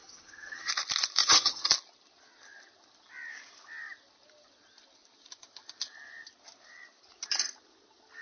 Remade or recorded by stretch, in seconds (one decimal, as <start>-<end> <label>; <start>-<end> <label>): 0.0-0.7 remade; 0.7-1.2 recorded; 1.2-1.7 remade; 1.7-8.2 recorded